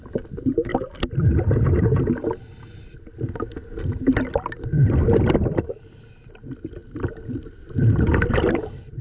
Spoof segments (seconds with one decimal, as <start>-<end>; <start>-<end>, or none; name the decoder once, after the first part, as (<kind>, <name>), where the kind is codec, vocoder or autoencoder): none